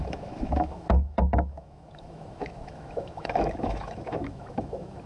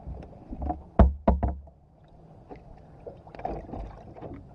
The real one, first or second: second